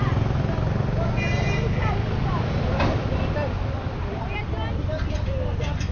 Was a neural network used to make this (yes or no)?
no